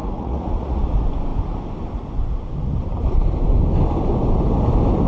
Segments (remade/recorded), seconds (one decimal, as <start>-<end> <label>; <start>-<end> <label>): 0.0-0.8 remade; 0.8-5.1 recorded

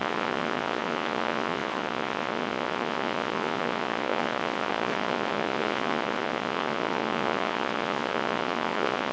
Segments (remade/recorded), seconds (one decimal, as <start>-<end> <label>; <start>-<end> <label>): 0.0-9.1 remade

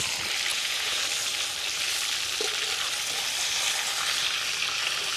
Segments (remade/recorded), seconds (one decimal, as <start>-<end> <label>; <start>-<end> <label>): 0.0-0.5 recorded; 0.5-1.0 remade; 1.0-5.2 recorded

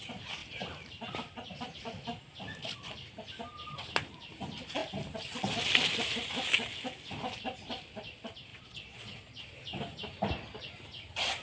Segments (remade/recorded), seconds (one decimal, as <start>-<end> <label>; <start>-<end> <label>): 0.0-8.5 recorded; 8.5-9.3 remade; 9.3-11.4 recorded

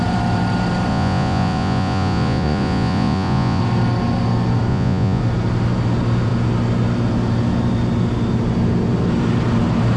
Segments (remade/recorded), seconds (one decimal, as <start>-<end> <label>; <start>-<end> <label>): 0.0-0.9 recorded; 0.9-3.6 remade; 3.6-4.7 recorded; 4.7-5.2 remade; 5.2-10.0 recorded

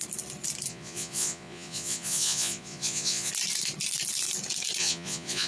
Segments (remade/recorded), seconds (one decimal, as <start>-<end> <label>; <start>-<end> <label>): 0.0-0.7 recorded; 0.7-3.3 remade; 3.3-4.8 recorded; 4.8-5.5 remade